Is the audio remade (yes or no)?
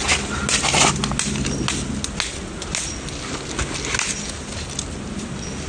no